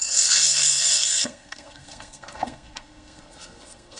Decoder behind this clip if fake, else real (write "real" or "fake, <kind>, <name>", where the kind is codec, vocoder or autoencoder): fake, codec, SNAC